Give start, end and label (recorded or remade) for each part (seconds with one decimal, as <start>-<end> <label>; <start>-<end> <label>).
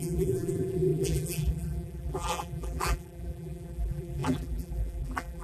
0.0-5.4 remade